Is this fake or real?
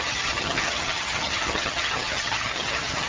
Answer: fake